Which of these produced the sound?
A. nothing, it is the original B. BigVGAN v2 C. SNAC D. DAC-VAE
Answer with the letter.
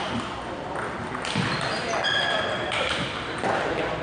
A